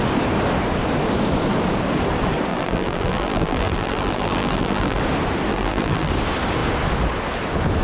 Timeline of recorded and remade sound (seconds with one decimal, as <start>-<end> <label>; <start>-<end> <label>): 0.0-2.5 recorded; 2.5-5.0 remade; 5.0-5.5 recorded; 5.5-6.1 remade; 6.1-7.8 recorded